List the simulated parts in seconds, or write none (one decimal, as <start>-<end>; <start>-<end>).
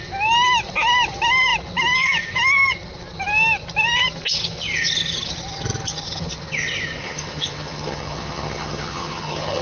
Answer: 7.0-9.6